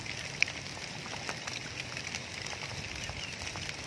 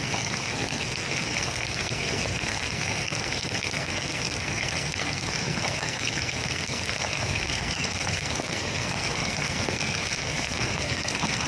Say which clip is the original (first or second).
first